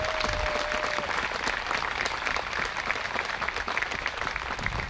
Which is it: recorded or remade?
recorded